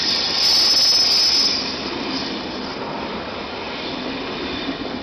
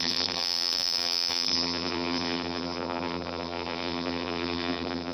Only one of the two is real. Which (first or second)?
first